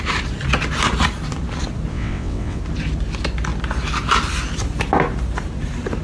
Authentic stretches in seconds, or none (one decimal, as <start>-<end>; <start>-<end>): 0.0-1.9; 2.6-6.0